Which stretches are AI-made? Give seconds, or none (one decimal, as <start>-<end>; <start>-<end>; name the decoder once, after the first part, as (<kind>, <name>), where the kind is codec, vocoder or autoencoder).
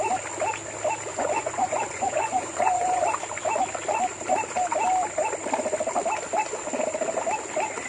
1.1-3.0 (vocoder, Vocos)